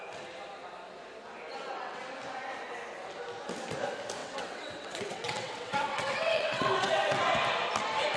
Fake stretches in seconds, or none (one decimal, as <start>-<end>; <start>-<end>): 1.5-2.0; 4.2-7.2